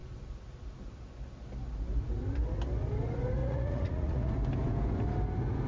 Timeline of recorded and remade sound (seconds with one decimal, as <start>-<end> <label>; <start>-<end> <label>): 0.0-3.4 recorded; 3.4-4.3 remade; 4.3-5.7 recorded